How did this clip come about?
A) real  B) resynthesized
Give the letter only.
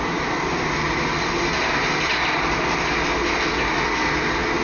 A